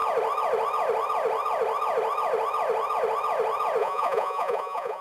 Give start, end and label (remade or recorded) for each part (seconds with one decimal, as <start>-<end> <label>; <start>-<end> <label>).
0.0-3.8 recorded; 3.8-5.0 remade